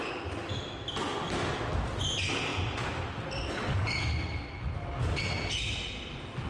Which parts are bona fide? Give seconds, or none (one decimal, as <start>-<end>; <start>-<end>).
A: 0.0-2.5; 3.5-6.5